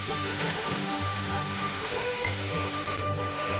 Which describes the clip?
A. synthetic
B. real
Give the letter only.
A